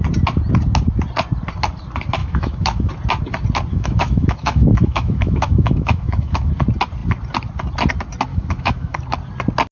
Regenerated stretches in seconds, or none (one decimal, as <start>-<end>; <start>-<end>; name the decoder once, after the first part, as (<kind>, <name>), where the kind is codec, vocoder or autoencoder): 2.2-2.9 (autoencoder, DAC-VAE); 3.7-6.5; 8.3-9.0